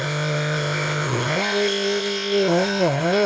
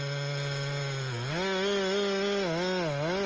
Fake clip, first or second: first